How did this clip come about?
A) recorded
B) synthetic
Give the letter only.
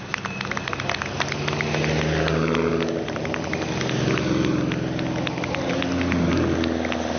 A